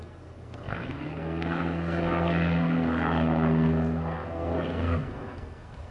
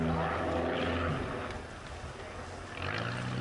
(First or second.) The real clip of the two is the second